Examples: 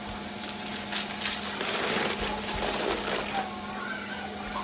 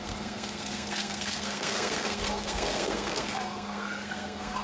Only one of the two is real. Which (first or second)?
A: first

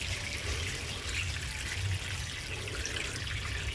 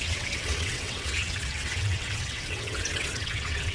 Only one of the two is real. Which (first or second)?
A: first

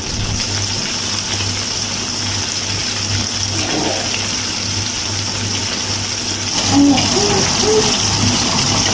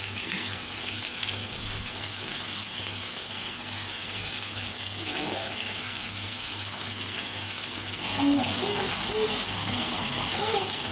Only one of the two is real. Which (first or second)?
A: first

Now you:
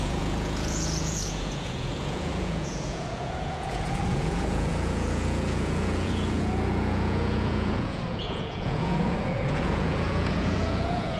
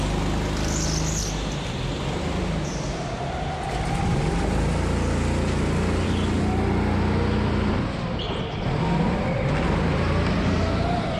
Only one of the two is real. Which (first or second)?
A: second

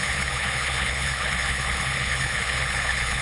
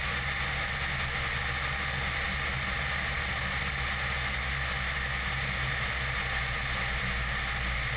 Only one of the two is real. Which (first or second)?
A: second